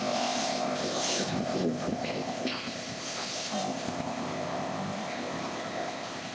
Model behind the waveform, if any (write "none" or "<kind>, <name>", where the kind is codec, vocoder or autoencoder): codec, ZipCodec